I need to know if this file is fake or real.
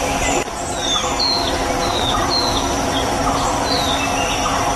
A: real